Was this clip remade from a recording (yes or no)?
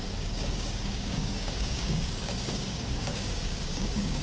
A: yes